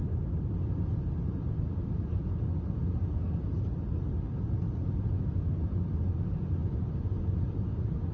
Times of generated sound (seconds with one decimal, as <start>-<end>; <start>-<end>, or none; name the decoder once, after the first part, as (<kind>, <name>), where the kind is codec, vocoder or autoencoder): none